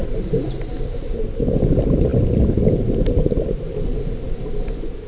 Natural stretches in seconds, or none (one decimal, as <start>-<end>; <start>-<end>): 0.0-5.1

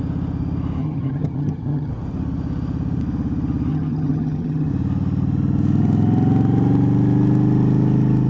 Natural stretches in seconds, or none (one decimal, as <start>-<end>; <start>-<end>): 0.0-0.8; 1.9-3.7; 4.7-8.3

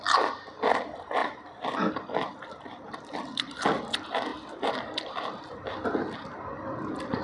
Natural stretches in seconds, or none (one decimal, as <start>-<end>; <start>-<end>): 0.0-1.2; 3.5-4.3; 5.1-6.5